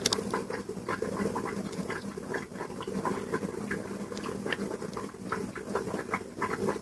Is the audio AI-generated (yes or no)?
no